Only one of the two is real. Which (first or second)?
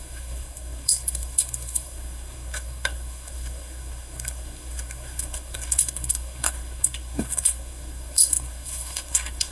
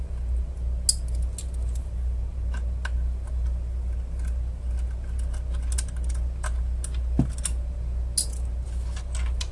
second